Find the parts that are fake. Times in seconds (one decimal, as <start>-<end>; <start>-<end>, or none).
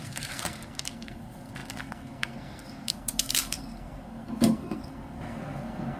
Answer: 0.0-6.0